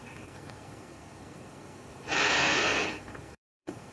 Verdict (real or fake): fake